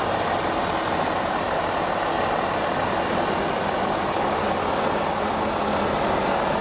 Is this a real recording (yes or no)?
yes